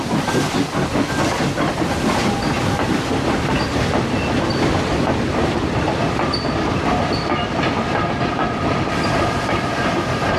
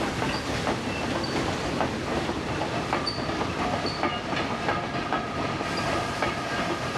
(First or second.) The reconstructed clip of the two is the first